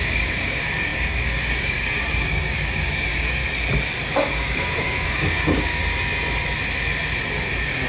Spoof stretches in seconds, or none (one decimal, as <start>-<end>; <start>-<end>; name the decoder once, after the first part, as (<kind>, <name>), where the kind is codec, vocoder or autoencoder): 0.0-3.4 (codec, DAC); 4.0-5.8